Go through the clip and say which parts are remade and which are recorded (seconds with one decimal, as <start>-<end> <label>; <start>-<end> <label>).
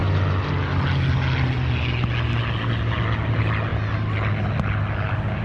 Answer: 0.0-5.4 recorded